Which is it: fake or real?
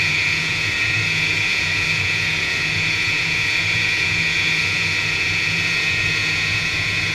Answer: fake